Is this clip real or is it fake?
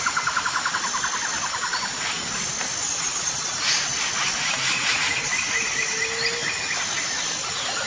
real